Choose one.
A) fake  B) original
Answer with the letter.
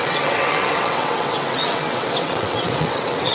A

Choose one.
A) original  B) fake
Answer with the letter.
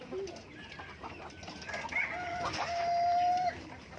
A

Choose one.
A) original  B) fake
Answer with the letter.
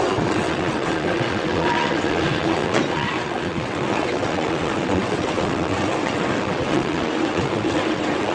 B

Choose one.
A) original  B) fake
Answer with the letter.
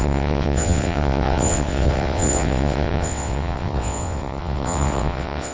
B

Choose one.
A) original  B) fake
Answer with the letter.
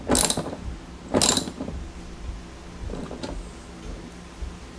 A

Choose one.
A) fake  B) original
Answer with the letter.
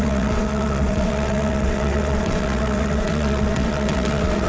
A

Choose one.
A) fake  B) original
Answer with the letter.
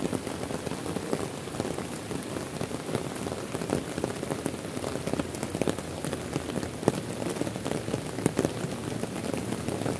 B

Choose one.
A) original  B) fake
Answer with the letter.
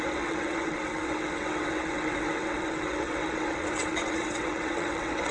B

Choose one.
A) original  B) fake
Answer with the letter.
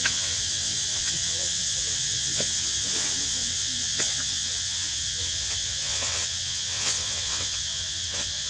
B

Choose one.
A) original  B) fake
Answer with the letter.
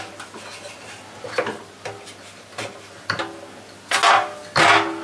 A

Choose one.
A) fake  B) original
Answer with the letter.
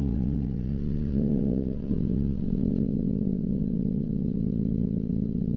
A